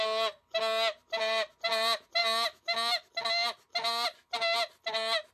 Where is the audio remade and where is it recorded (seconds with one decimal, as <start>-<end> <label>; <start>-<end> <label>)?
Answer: 0.0-2.2 recorded; 2.2-3.1 remade; 3.1-5.3 recorded